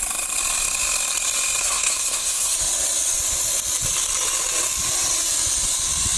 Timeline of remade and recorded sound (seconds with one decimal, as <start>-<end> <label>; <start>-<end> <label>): 0.0-1.6 recorded; 1.6-2.5 remade; 2.5-6.2 recorded